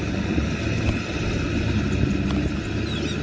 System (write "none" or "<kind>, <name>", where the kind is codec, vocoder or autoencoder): none